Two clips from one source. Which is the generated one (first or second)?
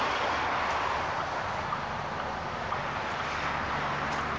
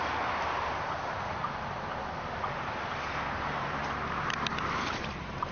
second